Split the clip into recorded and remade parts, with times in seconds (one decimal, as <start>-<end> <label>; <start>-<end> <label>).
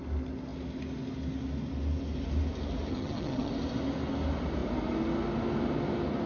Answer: 0.0-2.9 recorded; 2.9-3.5 remade; 3.5-6.3 recorded